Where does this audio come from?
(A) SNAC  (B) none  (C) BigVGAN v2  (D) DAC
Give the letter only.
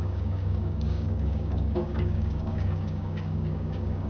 D